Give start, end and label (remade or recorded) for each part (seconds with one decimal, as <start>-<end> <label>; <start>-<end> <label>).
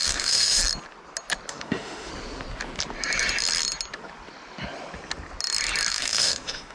0.0-0.6 remade; 0.6-1.5 recorded; 1.5-2.1 remade; 2.1-5.9 recorded; 5.9-6.7 remade